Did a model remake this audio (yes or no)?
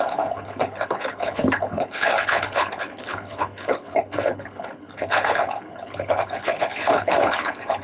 yes